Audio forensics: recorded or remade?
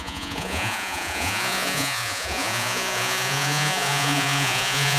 remade